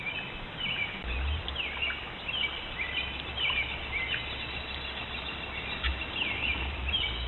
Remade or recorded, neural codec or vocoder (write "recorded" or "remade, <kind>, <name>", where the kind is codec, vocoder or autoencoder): recorded